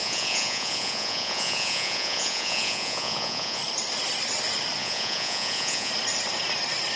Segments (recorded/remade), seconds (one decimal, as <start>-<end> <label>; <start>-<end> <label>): 0.0-3.6 remade; 3.6-4.8 recorded; 4.8-5.9 remade; 5.9-7.0 recorded